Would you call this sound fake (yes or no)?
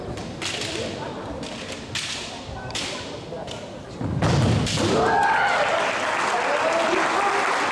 no